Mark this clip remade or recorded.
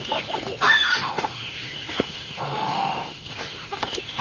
remade